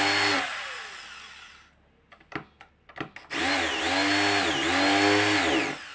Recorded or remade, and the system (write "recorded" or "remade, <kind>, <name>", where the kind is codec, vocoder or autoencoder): recorded